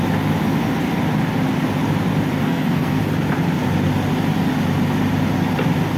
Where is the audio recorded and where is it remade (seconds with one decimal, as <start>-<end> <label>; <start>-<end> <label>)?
0.0-2.4 recorded; 2.4-3.0 remade; 3.0-6.0 recorded